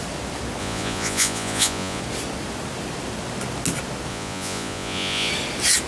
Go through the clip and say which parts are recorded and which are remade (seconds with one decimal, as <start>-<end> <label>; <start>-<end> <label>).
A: 0.0-0.6 recorded; 0.6-2.0 remade; 2.0-4.1 recorded; 4.1-5.3 remade; 5.3-5.9 recorded